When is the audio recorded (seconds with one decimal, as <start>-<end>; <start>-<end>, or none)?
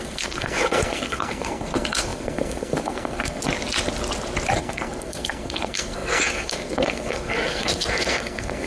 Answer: 3.4-4.6